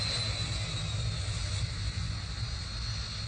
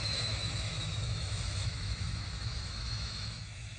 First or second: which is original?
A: first